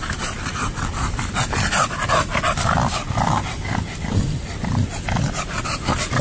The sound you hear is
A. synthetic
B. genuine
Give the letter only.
A